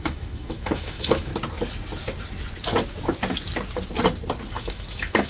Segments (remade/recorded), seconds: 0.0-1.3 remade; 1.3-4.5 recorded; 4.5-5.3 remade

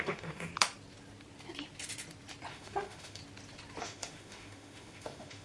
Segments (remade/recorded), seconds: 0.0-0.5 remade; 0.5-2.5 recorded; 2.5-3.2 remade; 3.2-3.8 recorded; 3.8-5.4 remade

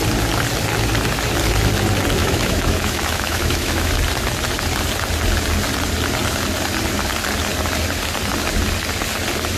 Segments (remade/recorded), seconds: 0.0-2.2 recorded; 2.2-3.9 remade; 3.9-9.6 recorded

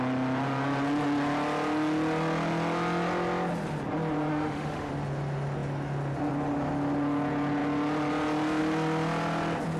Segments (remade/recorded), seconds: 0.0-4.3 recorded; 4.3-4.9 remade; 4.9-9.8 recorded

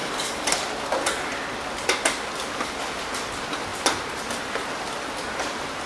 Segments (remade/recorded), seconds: 0.0-5.9 recorded

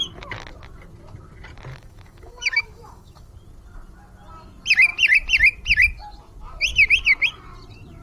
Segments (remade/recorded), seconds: 0.0-1.7 recorded; 1.7-3.3 remade; 3.3-8.0 recorded